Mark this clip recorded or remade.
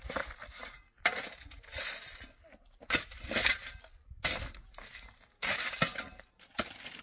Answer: recorded